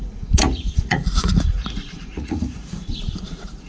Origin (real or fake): fake